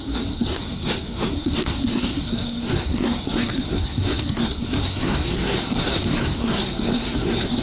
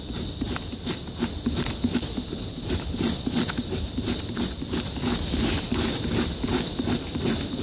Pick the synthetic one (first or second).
first